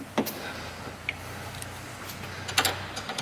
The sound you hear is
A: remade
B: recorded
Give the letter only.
B